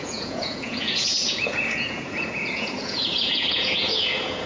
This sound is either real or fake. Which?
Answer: fake